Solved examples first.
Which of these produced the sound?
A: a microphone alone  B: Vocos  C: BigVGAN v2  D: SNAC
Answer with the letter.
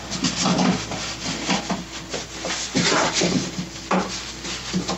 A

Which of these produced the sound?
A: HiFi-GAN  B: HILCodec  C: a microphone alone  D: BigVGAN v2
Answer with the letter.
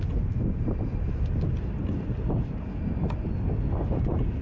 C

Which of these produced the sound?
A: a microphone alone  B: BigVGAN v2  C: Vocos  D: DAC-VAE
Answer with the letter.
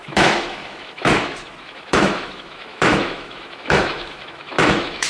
D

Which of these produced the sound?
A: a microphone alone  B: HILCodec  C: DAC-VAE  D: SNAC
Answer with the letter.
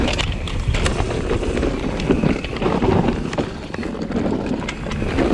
A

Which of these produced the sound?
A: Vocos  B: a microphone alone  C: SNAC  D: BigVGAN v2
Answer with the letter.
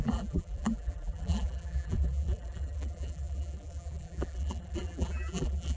D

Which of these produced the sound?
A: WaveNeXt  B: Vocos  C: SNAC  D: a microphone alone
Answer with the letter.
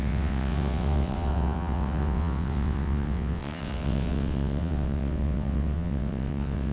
A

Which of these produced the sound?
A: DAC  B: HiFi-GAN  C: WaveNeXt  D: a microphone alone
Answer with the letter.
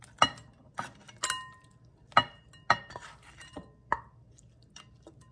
D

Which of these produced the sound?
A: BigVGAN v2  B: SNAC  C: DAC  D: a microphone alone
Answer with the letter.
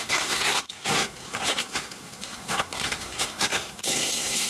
B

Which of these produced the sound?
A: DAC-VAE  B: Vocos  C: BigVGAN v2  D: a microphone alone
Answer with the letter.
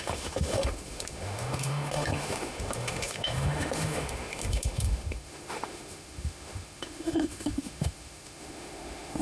A